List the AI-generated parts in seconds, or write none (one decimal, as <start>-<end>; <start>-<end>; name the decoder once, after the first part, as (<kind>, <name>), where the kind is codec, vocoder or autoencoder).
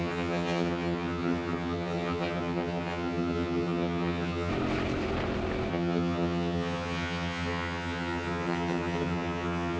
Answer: 0.0-4.5 (vocoder, HiFi-GAN); 5.7-9.8